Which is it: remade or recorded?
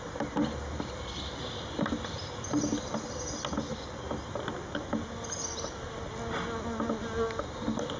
recorded